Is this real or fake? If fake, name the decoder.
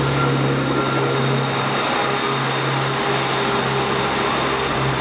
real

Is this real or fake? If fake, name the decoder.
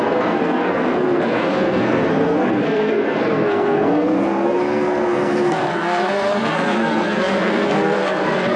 fake, codec, SNAC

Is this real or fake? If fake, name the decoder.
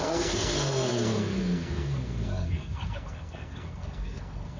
fake, codec, SNAC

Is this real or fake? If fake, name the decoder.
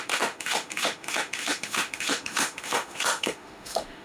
fake, autoencoder, DAC-VAE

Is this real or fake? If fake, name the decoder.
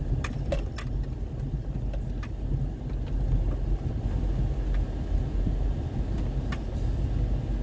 real